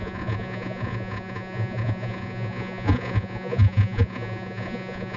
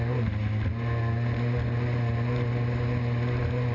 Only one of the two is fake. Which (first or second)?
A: first